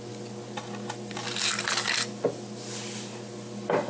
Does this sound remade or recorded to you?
recorded